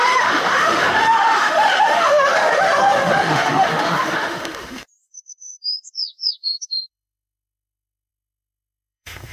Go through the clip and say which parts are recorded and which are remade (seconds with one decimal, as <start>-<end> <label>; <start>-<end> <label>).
0.0-9.3 remade